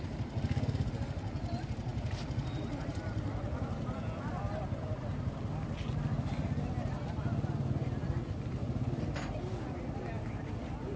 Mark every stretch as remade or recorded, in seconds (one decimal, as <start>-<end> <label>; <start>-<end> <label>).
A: 0.0-1.9 recorded; 1.9-2.8 remade; 2.8-8.0 recorded; 8.0-9.0 remade; 9.0-11.0 recorded